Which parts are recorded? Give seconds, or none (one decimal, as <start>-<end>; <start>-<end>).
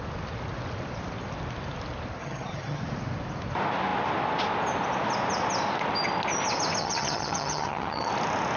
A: 0.0-2.2; 2.8-6.8; 8.1-8.6